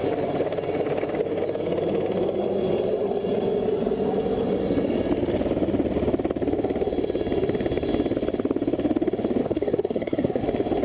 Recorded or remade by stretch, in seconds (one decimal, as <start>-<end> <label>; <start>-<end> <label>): 0.0-9.4 recorded; 9.4-10.4 remade; 10.4-10.8 recorded